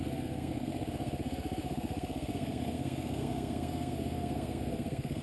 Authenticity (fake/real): fake